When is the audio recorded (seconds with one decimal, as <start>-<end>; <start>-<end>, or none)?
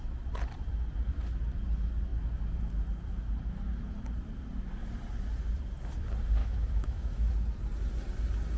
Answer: 0.0-6.4; 7.3-8.6